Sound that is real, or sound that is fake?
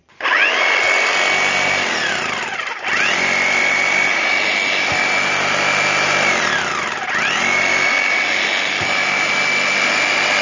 real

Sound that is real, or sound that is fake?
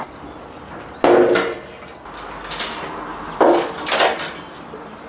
real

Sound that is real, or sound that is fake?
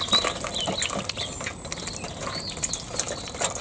real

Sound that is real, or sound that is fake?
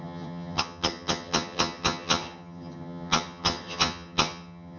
fake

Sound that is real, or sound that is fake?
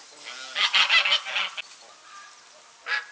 real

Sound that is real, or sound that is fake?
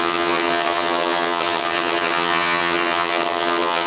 fake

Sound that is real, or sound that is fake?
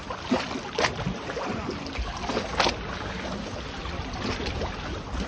real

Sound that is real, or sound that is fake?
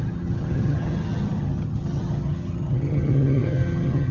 fake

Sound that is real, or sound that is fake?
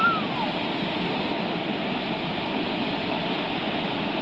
real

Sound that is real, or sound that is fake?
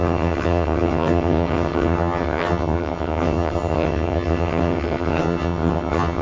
fake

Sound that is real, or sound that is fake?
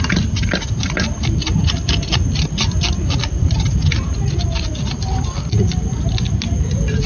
real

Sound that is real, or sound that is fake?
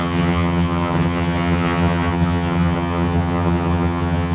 fake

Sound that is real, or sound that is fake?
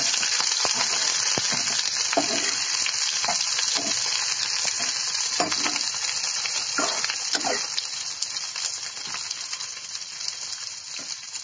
real